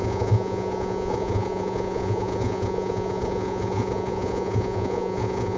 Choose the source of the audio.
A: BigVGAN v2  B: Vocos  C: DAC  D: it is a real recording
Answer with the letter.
B